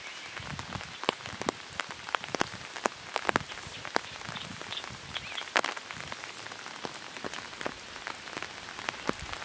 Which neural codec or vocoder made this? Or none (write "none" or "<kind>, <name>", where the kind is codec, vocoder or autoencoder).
none